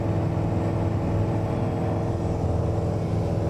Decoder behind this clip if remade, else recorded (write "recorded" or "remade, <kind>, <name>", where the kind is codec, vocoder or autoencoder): recorded